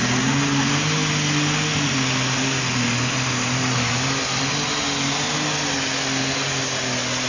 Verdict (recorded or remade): recorded